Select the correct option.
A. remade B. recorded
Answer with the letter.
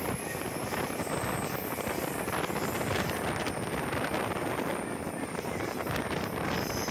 B